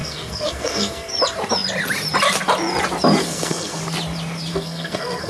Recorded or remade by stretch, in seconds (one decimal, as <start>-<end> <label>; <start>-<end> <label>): 0.0-1.1 remade; 1.1-3.2 recorded; 3.2-3.8 remade; 3.8-4.5 recorded; 4.5-5.3 remade